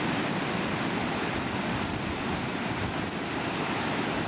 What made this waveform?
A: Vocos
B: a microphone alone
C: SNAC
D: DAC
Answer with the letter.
B